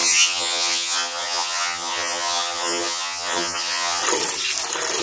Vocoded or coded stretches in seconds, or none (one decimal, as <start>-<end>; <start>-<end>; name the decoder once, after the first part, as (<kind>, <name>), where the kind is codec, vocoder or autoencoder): 0.0-4.0 (vocoder, HiFi-GAN)